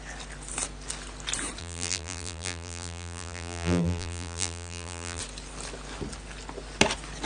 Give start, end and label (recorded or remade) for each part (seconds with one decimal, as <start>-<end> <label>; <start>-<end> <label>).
0.0-1.6 recorded; 1.6-5.2 remade; 5.2-7.3 recorded